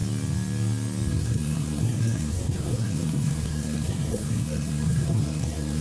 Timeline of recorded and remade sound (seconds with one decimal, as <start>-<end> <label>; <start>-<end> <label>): 0.0-1.1 recorded; 1.1-5.8 remade

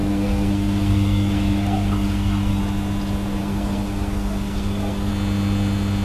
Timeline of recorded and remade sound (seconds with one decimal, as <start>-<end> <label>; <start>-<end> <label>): 0.0-2.6 remade; 2.6-3.4 recorded; 3.4-5.1 remade; 5.1-6.0 recorded